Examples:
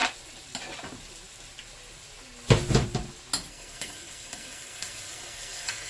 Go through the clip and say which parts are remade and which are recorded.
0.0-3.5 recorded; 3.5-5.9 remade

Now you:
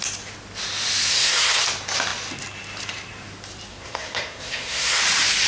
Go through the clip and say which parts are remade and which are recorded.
0.0-1.1 recorded; 1.1-1.6 remade; 1.6-3.7 recorded; 3.7-5.0 remade; 5.0-5.5 recorded

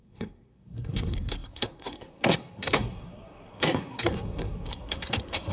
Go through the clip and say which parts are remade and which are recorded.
0.0-5.5 remade